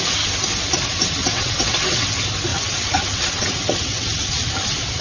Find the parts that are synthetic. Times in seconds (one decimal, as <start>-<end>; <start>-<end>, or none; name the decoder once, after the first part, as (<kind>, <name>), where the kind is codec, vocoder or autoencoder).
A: 1.2-2.1 (vocoder, WaveNeXt); 2.5-4.3